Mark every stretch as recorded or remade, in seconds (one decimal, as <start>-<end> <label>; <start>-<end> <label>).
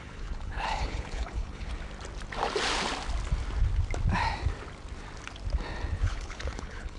0.0-1.7 remade; 1.7-5.9 recorded; 5.9-7.0 remade